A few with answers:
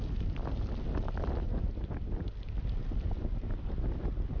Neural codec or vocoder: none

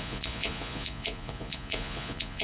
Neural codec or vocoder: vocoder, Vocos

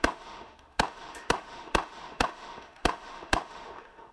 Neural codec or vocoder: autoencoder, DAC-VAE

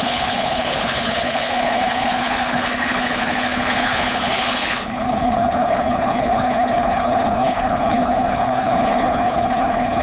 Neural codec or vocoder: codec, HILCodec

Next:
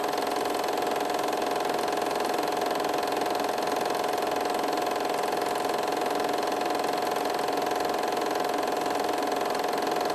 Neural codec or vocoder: none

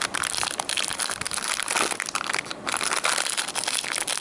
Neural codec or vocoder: none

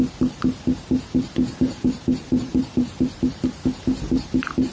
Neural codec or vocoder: vocoder, BigVGAN v2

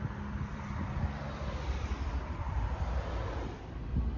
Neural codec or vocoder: vocoder, BigVGAN v2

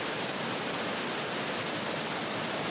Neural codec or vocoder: none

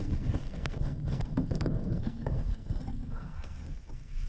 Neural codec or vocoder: codec, SNAC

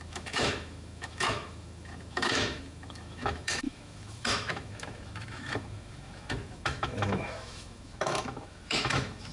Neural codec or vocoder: autoencoder, DAC-VAE